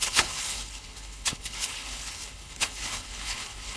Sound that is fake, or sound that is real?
fake